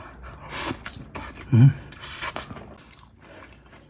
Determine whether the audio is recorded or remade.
recorded